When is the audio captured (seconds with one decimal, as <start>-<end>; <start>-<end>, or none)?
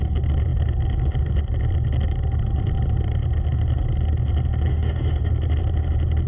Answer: 0.0-4.7; 5.3-6.3